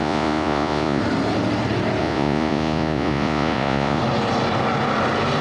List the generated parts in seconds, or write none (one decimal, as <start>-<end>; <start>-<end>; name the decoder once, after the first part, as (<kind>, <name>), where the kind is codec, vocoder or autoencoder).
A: 0.0-1.0 (vocoder, Vocos); 2.0-4.0